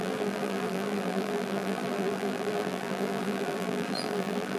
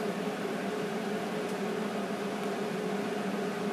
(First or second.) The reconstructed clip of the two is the first